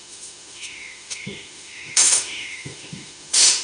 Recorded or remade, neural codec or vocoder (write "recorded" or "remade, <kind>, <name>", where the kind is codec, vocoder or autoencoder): remade, autoencoder, DAC-VAE